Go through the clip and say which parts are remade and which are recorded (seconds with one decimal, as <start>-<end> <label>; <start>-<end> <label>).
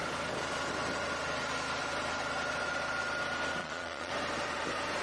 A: 0.0-3.6 recorded; 3.6-4.1 remade; 4.1-5.0 recorded